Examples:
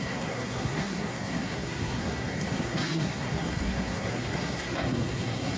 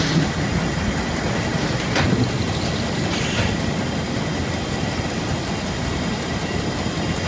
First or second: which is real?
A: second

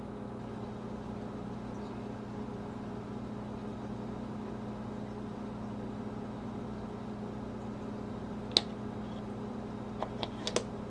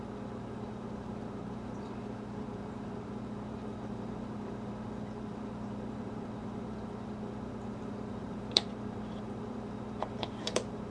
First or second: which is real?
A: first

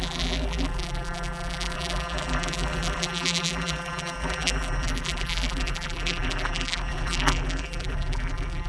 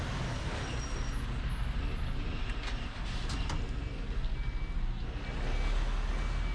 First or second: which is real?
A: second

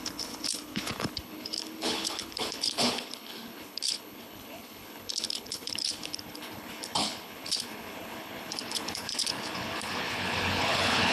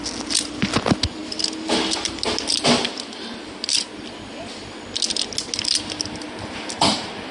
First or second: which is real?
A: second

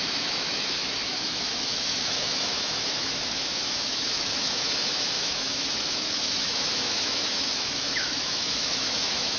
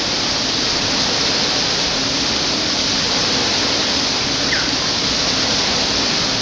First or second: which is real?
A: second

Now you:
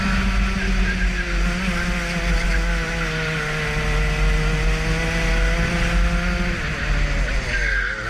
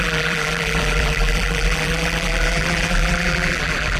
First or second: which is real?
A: first